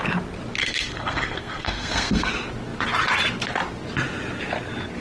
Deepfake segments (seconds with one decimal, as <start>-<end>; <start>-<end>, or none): 0.6-2.3